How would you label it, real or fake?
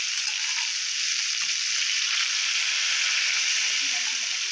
real